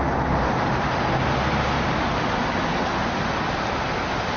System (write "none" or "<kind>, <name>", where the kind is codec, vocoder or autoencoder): none